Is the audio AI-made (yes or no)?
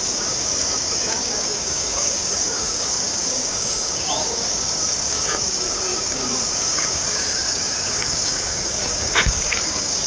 yes